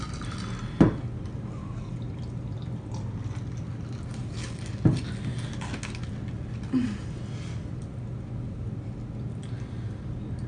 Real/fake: real